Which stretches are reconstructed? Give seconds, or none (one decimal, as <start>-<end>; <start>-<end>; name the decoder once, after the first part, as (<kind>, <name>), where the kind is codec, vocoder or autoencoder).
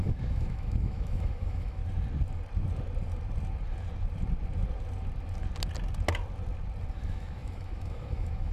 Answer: 0.0-1.8 (autoencoder, DAC-VAE); 6.9-8.5